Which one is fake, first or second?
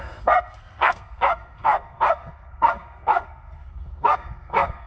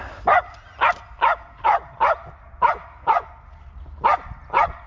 first